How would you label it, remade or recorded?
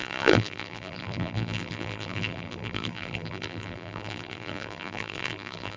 remade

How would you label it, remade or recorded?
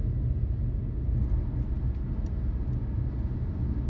recorded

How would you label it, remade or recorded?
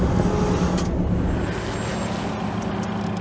recorded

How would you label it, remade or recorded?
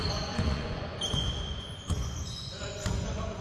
remade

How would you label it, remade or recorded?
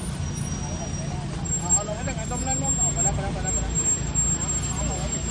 recorded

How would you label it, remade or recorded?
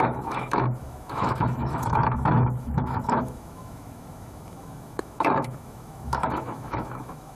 remade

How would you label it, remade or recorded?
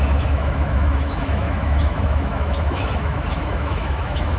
remade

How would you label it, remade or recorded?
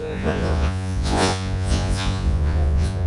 remade